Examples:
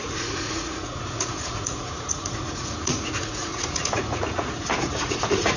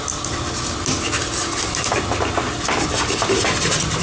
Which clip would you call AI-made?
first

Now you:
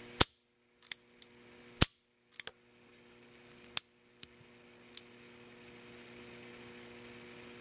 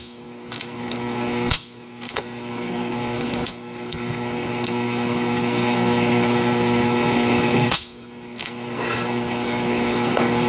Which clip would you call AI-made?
second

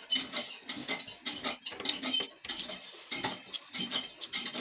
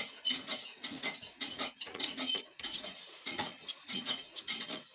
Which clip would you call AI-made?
second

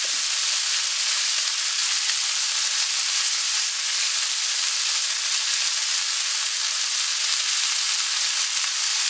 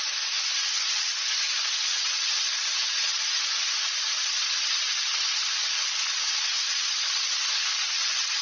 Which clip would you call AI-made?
second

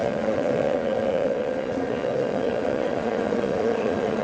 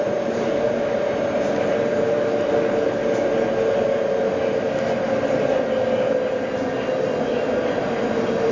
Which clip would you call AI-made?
first